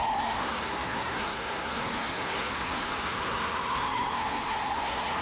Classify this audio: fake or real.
fake